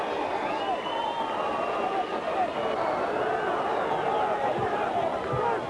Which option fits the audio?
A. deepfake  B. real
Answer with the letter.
B